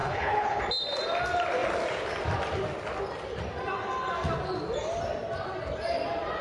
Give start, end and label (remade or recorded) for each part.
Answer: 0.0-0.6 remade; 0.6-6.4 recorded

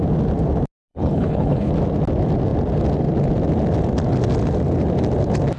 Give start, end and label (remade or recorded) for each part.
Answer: 0.0-0.9 recorded; 0.9-1.7 remade; 1.7-5.6 recorded

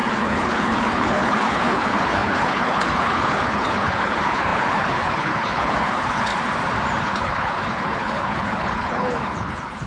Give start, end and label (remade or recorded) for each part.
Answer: 0.0-6.3 remade; 6.3-7.0 recorded; 7.0-9.9 remade